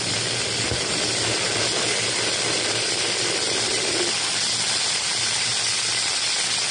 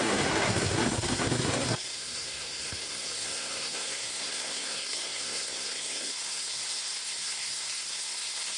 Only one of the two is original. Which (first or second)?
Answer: first